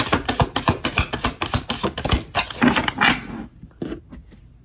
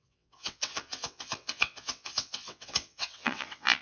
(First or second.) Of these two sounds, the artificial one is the second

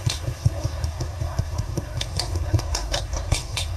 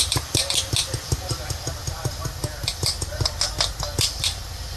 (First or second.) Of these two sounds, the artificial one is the first